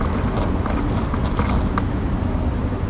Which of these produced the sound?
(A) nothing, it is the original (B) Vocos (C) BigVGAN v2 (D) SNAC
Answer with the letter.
A